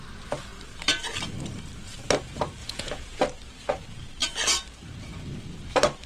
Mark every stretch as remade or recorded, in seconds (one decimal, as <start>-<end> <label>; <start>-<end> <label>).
0.0-2.6 recorded; 2.6-3.2 remade; 3.2-6.1 recorded